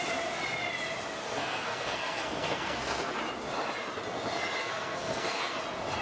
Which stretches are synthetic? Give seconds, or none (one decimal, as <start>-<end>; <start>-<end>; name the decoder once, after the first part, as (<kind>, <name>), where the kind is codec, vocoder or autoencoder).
1.2-3.2 (codec, SNAC); 4.6-5.6